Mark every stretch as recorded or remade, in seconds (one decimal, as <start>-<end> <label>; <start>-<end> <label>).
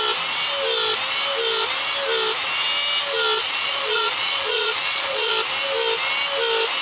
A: 0.0-3.4 recorded; 3.4-5.3 remade; 5.3-6.8 recorded